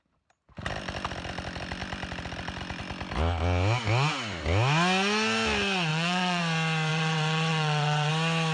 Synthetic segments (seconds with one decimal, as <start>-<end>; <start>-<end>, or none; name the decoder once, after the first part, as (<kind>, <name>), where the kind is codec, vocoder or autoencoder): 5.9-6.4 (vocoder, WaveNeXt); 6.9-8.1